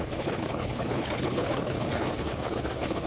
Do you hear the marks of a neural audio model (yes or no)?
yes